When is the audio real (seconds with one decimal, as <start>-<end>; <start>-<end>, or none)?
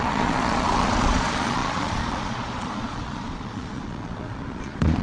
none